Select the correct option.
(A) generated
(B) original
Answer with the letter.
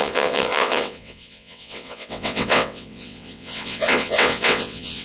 A